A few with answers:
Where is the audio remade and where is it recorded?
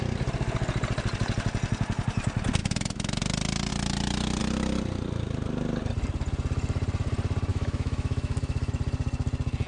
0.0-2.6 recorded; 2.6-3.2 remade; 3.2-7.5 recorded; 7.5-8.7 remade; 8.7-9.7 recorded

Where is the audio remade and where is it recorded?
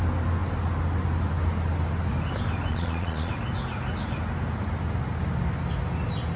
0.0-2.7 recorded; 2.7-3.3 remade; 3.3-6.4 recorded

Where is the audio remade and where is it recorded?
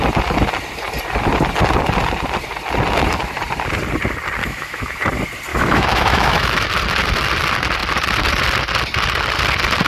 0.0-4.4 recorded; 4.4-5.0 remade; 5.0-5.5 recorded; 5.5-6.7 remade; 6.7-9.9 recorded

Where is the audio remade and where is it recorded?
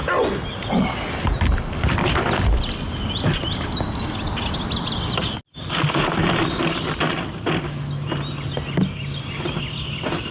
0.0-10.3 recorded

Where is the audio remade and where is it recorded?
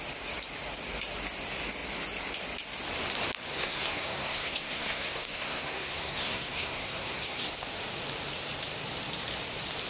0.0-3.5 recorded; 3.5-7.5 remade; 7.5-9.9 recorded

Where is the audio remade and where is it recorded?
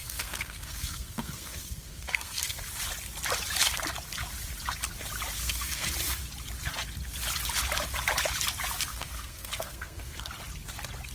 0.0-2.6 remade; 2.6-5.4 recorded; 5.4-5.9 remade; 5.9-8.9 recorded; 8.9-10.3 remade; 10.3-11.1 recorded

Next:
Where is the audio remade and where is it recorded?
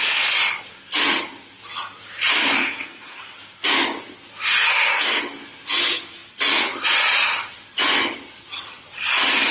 0.0-2.6 recorded; 2.6-3.2 remade; 3.2-4.6 recorded; 4.6-5.2 remade; 5.2-9.5 recorded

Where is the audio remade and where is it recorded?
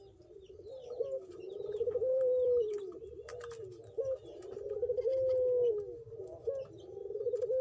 0.0-3.3 remade; 3.3-7.6 recorded